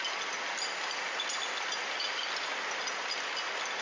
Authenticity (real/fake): real